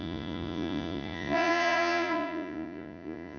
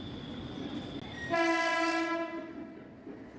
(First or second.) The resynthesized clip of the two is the first